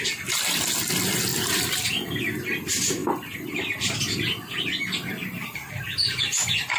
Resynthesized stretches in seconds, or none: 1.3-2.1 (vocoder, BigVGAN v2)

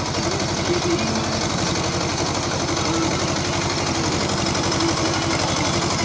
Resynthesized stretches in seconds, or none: 2.1-6.0 (vocoder, BigVGAN v2)

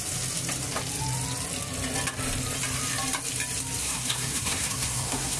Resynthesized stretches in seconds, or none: 3.8-5.4 (codec, SNAC)

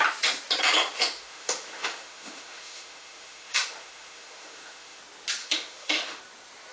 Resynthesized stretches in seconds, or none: 1.0-5.0 (autoencoder, DAC-VAE); 5.4-6.2

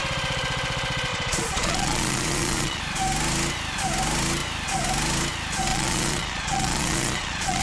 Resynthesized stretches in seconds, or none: 1.1-2.8 (vocoder, Vocos); 5.7-7.6

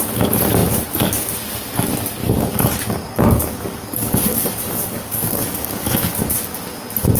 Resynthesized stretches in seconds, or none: 2.2-6.1 (codec, DAC)